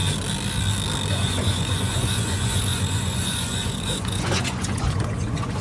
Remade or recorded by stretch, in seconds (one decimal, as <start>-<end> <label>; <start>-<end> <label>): 0.0-1.1 recorded; 1.1-5.6 remade